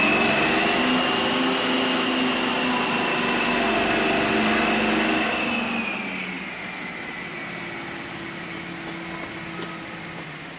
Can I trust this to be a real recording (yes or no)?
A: yes